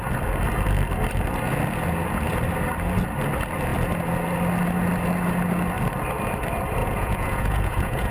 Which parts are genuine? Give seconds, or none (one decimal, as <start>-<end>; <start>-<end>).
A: 0.0-6.8